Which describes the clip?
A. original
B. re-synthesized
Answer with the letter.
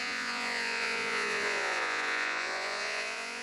B